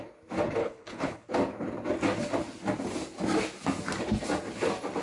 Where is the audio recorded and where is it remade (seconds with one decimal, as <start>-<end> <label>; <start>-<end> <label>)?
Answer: 0.0-0.6 recorded; 0.6-1.3 remade; 1.3-5.0 recorded